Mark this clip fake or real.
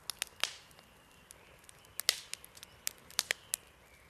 real